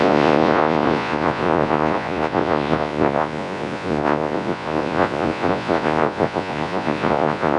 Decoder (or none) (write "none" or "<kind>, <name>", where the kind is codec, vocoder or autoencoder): vocoder, Vocos